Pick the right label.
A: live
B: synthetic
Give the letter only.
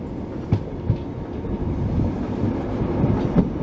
A